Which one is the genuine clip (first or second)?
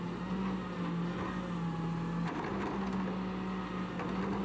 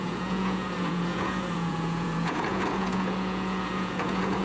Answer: first